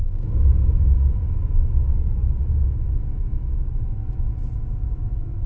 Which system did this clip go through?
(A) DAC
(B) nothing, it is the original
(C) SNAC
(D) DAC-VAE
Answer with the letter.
B